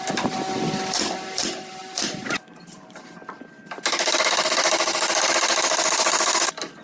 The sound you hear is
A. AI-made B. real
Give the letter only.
B